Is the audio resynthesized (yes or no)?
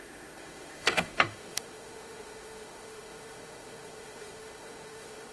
yes